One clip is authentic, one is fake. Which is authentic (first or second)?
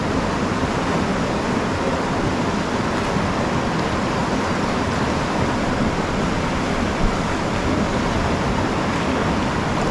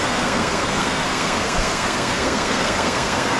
first